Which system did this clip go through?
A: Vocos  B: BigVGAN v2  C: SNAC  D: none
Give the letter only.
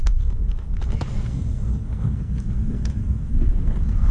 C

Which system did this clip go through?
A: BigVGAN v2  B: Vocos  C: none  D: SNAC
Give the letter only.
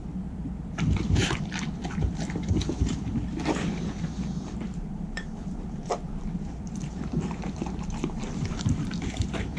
A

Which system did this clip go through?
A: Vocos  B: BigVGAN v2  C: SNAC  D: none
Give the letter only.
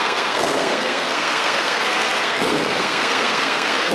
C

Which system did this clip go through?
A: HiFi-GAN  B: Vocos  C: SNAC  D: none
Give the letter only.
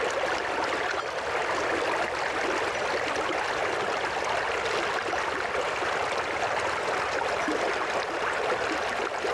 D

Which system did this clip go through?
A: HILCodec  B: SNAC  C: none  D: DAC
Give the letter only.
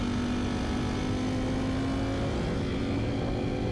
C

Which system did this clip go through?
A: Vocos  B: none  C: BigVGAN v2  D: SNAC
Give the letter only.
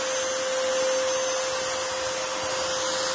B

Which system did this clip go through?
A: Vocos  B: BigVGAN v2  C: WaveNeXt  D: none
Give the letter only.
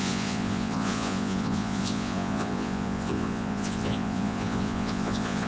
A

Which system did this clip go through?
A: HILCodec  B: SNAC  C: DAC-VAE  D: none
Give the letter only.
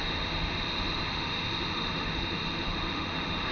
C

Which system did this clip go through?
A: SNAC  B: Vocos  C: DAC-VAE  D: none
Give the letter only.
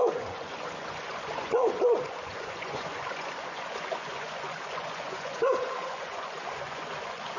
B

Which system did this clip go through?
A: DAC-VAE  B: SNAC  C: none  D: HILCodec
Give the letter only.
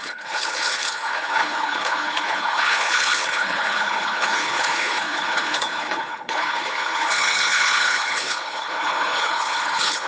D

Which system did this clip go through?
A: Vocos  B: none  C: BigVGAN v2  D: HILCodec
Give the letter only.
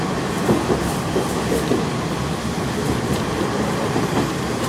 B